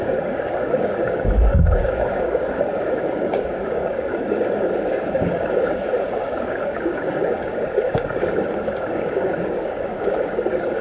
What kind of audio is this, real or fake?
fake